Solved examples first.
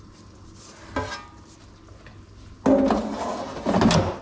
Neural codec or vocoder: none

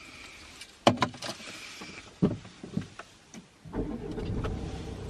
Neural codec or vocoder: none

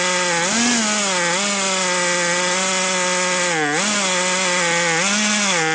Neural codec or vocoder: none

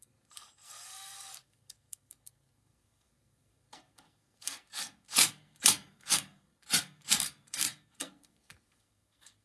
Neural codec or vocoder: codec, SNAC